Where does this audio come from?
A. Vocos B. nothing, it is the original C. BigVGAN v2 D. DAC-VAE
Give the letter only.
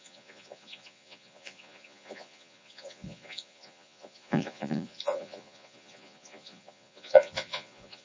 A